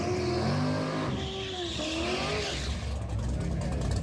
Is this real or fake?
real